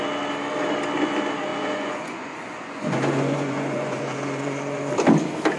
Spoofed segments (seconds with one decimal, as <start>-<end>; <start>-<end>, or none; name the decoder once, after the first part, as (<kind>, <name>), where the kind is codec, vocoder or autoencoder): 1.5-4.9 (vocoder, Vocos)